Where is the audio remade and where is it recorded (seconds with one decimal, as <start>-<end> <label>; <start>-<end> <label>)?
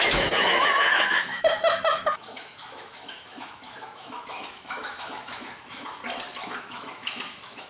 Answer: 0.0-6.0 remade; 6.0-6.6 recorded; 6.6-7.7 remade